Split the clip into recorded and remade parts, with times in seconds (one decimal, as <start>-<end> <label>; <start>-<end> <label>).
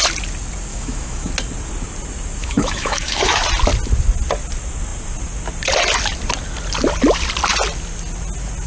0.0-0.7 recorded; 0.7-1.3 remade; 1.3-2.4 recorded; 2.4-3.4 remade; 3.4-8.7 recorded